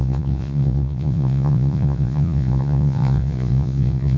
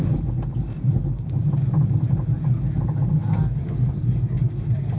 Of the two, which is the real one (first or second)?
second